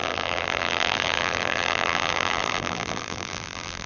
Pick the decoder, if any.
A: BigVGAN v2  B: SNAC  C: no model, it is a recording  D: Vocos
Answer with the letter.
A